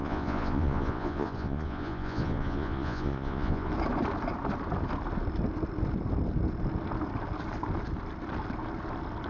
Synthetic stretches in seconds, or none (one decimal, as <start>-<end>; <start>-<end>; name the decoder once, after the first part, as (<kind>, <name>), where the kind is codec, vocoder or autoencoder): 0.0-3.7 (vocoder, Vocos)